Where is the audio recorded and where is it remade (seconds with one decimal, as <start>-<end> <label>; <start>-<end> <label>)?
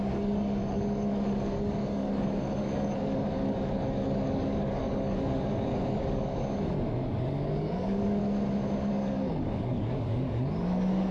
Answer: 0.0-8.2 remade; 8.2-8.9 recorded; 8.9-11.1 remade